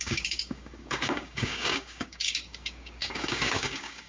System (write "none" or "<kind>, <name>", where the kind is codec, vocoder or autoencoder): codec, DAC